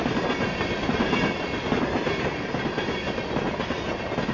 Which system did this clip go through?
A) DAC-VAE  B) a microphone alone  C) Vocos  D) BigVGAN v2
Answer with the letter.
B